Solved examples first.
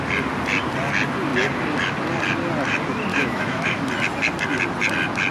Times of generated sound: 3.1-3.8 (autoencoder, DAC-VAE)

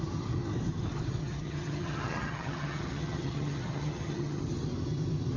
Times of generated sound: 1.2-4.4 (vocoder, HiFi-GAN)

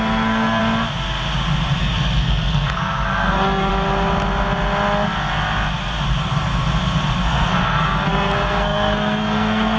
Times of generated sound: 0.0-0.6 (codec, SNAC); 1.8-3.7; 7.3-9.8

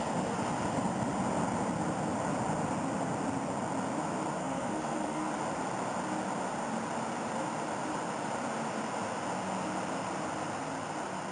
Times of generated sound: 4.4-5.3 (codec, SNAC)

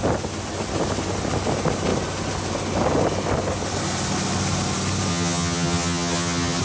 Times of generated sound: 5.1-6.6 (vocoder, HiFi-GAN)